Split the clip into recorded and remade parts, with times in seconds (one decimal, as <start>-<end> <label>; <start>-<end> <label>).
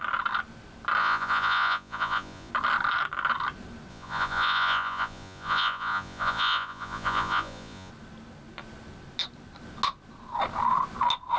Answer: 0.0-1.0 recorded; 1.0-2.5 remade; 2.5-3.9 recorded; 3.9-7.9 remade; 7.9-11.4 recorded